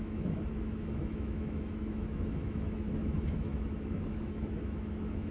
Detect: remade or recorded remade